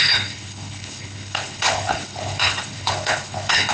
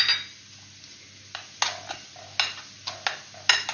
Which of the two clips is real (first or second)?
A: second